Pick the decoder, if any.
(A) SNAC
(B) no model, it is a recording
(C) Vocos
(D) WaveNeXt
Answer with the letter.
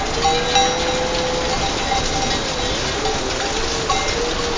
B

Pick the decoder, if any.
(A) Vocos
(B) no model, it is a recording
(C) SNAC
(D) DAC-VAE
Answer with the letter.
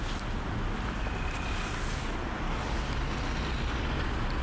B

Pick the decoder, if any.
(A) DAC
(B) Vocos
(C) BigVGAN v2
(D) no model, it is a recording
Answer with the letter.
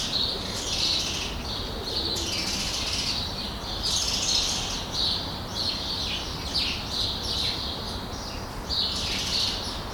D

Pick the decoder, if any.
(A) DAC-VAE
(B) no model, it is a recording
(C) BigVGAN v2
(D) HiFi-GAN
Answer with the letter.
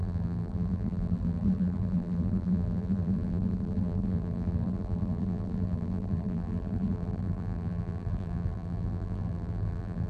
C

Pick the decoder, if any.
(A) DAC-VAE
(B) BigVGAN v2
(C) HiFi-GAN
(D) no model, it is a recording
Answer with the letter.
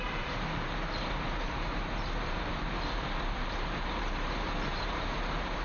B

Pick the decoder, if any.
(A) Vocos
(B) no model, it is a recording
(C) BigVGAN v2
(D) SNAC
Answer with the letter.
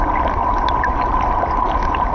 B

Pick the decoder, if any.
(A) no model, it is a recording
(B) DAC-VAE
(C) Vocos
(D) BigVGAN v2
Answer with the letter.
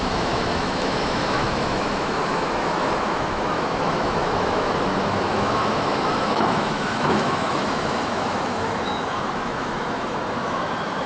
B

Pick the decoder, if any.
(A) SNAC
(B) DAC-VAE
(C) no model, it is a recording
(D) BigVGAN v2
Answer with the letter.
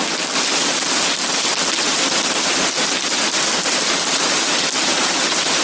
C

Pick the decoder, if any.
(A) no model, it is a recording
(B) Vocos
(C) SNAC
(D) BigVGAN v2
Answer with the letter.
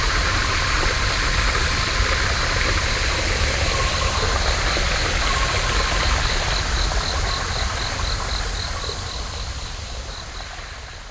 A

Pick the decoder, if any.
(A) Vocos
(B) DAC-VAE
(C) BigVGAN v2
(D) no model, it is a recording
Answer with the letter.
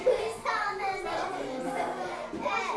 D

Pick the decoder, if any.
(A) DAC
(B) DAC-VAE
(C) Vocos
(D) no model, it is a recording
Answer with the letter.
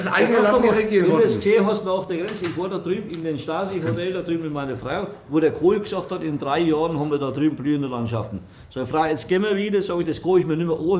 A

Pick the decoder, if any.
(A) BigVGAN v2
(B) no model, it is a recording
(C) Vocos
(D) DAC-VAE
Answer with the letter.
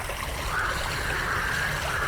B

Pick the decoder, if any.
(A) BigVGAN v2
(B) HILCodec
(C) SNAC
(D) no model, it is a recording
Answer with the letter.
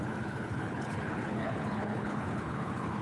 B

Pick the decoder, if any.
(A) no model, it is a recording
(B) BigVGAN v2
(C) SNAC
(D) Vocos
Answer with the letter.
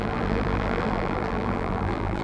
B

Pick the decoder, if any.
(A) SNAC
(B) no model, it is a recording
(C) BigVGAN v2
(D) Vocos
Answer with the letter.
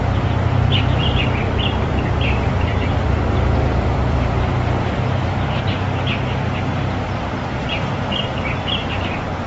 C